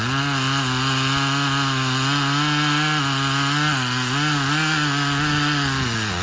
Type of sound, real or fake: real